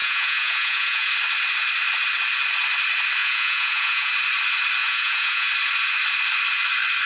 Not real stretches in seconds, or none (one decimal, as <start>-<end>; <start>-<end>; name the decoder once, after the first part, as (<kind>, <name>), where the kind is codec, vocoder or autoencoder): 0.0-1.1 (vocoder, Vocos); 3.2-4.1; 4.8-5.5